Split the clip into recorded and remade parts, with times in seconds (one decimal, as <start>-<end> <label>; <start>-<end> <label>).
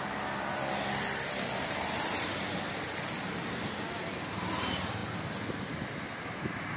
0.0-6.8 recorded